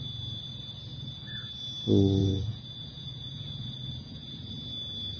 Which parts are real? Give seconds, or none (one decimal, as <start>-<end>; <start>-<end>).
0.0-2.2; 4.5-5.2